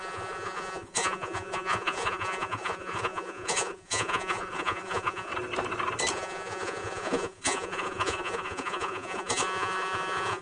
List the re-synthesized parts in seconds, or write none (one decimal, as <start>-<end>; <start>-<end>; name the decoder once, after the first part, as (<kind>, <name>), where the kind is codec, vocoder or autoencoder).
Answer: 0.0-5.3 (vocoder, Vocos); 6.1-10.4